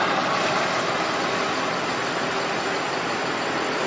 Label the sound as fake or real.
real